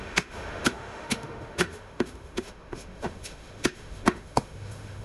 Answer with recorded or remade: remade